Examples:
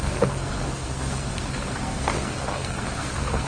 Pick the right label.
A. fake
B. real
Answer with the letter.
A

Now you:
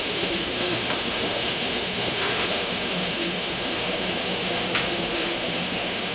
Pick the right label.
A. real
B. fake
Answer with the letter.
B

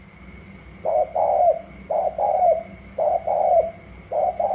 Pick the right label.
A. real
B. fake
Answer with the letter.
A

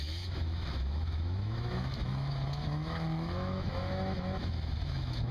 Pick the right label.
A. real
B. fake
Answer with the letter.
B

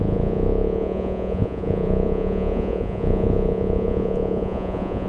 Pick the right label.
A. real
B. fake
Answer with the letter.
B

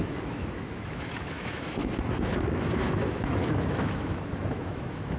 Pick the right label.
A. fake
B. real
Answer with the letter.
A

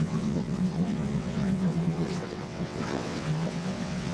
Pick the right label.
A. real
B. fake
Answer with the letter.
B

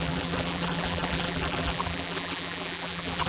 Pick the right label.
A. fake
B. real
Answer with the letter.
A